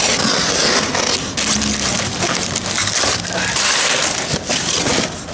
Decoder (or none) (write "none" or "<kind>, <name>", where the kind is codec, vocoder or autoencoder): none